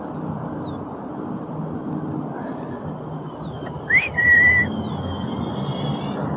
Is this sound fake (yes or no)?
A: no